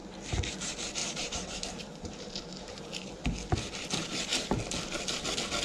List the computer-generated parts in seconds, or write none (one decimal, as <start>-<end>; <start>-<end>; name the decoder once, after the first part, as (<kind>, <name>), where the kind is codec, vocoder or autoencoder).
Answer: 1.0-3.1 (vocoder, BigVGAN v2)

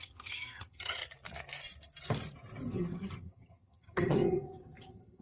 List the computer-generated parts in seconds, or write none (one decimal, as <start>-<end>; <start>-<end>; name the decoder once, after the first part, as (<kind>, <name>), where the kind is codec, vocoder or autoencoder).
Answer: 0.0-1.0 (vocoder, HiFi-GAN); 2.6-5.2

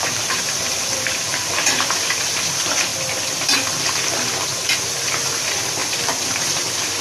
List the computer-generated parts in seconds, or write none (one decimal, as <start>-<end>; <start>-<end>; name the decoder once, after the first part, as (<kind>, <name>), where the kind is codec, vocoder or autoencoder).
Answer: 0.0-2.9 (vocoder, BigVGAN v2); 4.1-7.0

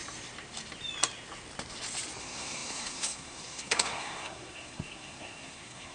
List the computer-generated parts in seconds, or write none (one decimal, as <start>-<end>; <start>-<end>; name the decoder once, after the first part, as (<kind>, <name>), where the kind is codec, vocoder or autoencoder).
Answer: 2.2-5.9 (codec, SNAC)

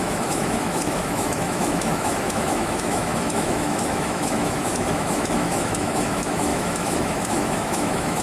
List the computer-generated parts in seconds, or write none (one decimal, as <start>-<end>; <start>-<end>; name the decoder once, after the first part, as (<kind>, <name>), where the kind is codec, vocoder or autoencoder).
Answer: 0.0-8.2 (autoencoder, DAC-VAE)

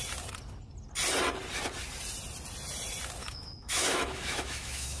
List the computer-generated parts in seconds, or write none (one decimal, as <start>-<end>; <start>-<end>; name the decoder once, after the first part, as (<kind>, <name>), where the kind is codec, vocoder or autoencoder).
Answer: 3.2-5.0 (autoencoder, DAC-VAE)